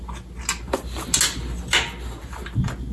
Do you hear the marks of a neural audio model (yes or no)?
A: no